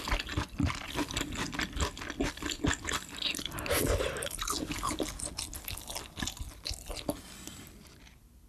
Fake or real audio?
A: real